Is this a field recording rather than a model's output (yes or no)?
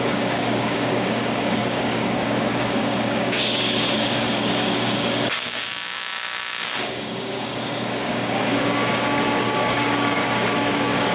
no